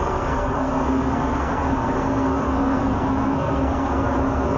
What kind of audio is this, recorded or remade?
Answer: remade